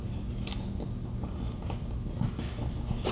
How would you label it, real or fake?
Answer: real